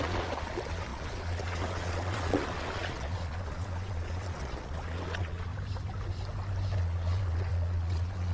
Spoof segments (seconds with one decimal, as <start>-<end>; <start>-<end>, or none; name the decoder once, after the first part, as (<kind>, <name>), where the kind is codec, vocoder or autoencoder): 0.0-5.5 (vocoder, Vocos); 6.8-8.3